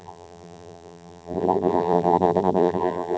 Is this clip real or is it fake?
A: fake